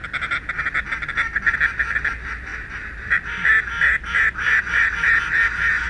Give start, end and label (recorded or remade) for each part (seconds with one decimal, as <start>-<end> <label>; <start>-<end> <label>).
0.0-5.9 recorded